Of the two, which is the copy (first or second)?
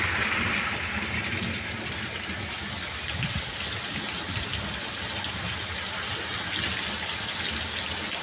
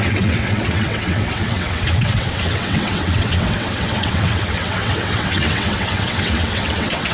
second